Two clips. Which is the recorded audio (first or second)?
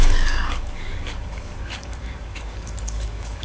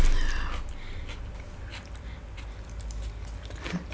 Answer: second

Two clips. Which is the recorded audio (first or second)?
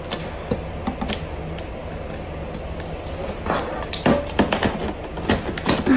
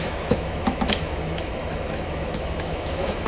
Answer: first